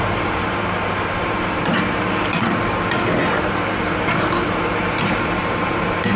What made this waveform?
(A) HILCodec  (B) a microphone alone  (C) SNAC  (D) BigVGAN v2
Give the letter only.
D